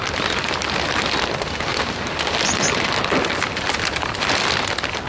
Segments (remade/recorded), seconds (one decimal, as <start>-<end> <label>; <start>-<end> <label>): 0.0-5.1 recorded